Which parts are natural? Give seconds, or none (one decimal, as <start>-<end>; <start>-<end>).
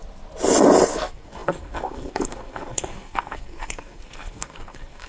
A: 0.0-0.9